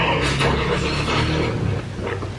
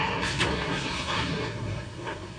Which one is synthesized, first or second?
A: second